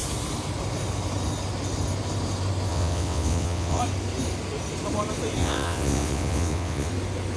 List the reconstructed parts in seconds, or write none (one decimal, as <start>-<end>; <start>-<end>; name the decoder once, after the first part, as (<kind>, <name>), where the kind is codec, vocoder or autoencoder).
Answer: 2.7-3.8 (vocoder, WaveNeXt); 5.4-6.9